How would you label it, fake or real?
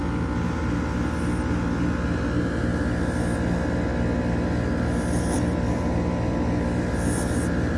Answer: real